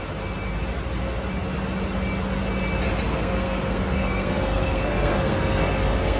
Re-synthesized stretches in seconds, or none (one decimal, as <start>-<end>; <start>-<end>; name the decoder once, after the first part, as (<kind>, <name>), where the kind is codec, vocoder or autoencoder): 3.1-6.2 (codec, SNAC)